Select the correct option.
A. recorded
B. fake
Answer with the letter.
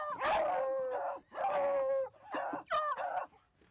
A